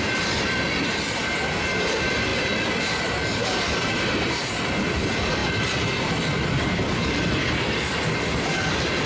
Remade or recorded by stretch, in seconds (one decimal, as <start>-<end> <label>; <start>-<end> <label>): 0.0-1.2 remade; 1.2-1.9 recorded; 1.9-2.3 remade; 2.3-3.4 recorded; 3.4-9.1 remade